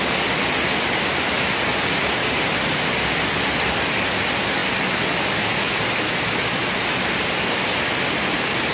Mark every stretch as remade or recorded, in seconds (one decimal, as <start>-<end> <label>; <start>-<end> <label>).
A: 0.0-8.7 recorded